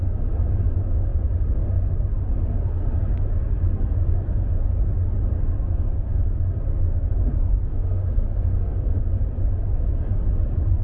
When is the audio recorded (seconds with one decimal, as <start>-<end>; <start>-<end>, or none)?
0.0-7.7; 9.0-10.8